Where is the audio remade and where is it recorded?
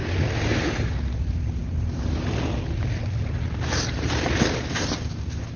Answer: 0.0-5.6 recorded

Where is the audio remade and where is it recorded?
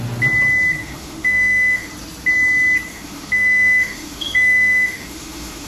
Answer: 0.0-0.8 recorded; 0.8-1.9 remade; 1.9-2.9 recorded; 2.9-5.7 remade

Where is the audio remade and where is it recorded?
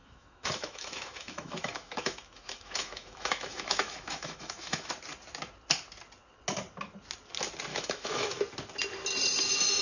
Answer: 0.0-4.9 remade; 4.9-7.7 recorded; 7.7-8.4 remade; 8.4-9.8 recorded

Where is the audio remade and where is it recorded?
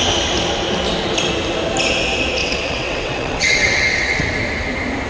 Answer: 0.0-2.4 recorded; 2.4-4.3 remade; 4.3-5.1 recorded